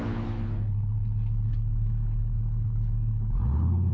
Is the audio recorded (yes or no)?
no